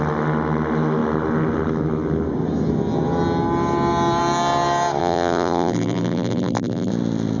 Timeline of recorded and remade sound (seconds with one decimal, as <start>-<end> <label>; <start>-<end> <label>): 0.0-5.0 recorded; 5.0-6.9 remade; 6.9-7.4 recorded